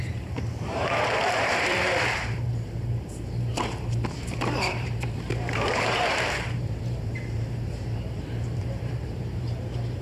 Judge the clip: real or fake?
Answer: fake